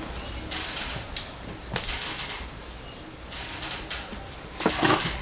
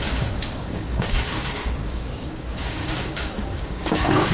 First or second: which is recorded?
first